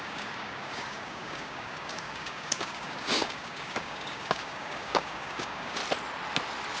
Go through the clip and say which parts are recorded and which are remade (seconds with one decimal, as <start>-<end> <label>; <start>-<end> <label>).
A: 0.0-5.8 remade; 5.8-6.8 recorded